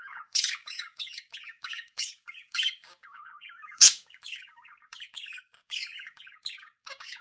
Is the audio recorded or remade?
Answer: remade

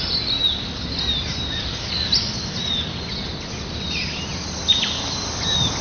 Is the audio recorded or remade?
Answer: recorded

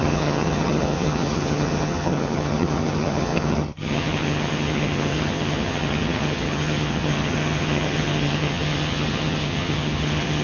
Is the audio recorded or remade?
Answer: remade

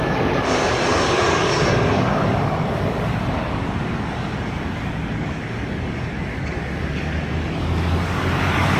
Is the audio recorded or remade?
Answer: remade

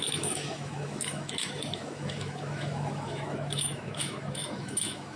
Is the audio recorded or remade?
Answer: remade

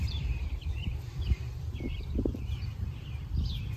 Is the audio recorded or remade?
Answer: remade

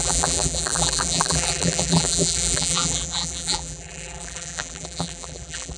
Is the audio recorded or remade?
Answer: remade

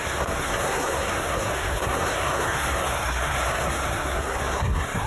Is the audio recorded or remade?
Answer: remade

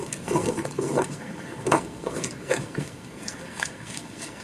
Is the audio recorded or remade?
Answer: remade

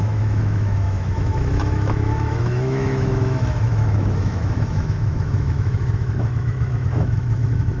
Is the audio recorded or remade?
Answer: remade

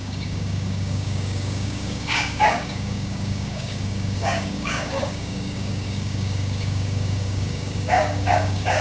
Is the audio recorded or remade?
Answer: remade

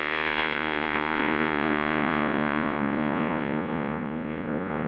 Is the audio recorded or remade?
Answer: remade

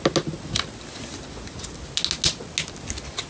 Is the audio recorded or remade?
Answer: recorded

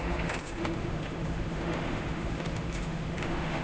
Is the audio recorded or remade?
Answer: remade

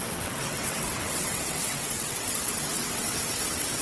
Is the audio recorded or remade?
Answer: remade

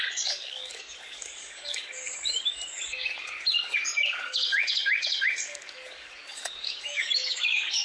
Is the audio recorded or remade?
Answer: remade